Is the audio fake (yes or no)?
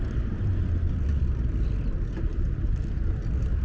no